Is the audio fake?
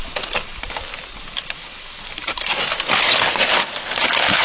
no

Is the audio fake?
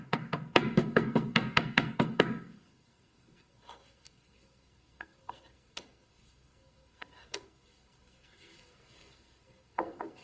yes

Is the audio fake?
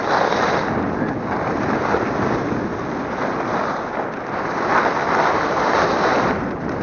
no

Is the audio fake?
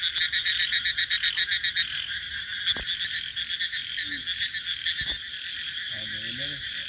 no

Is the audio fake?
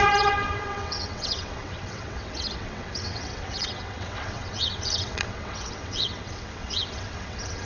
yes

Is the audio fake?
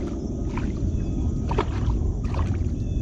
no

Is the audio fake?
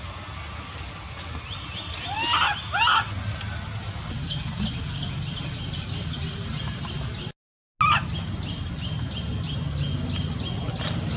no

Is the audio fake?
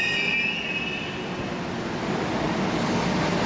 no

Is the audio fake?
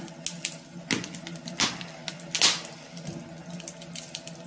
no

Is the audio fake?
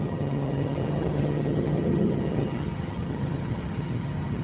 yes